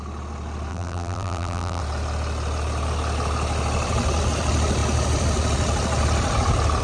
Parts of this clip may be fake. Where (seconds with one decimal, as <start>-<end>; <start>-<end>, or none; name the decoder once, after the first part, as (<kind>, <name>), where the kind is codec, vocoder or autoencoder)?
0.7-1.8 (vocoder, BigVGAN v2)

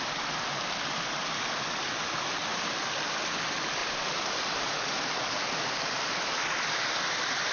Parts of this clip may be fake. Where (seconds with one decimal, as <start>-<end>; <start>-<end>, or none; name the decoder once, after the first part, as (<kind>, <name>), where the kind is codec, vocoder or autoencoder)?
2.5-3.1 (vocoder, BigVGAN v2); 3.8-4.3

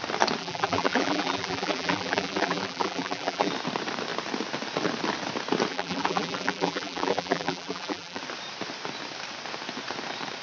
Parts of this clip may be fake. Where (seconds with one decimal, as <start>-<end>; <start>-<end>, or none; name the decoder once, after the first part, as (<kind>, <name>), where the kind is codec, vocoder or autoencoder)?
0.4-3.5 (vocoder, BigVGAN v2); 5.7-8.2